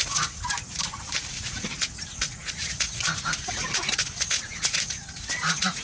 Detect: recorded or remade remade